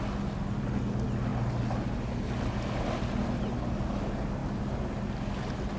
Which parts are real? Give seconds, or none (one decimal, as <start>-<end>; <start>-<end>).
0.0-5.8